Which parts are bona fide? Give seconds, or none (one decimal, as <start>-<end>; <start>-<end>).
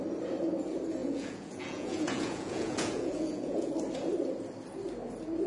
0.0-1.0; 3.7-5.5